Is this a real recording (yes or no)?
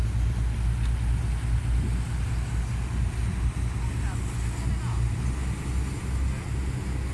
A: yes